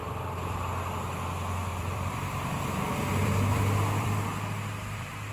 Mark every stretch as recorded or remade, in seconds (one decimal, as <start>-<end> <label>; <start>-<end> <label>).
0.0-0.5 remade; 0.5-1.7 recorded; 1.7-5.3 remade